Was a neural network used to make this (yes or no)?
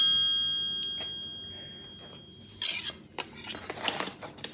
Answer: no